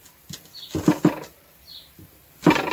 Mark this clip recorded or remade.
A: recorded